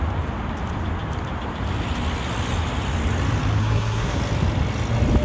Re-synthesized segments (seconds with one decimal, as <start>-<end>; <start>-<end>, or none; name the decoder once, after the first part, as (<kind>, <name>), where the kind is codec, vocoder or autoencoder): 3.6-4.2 (codec, SNAC)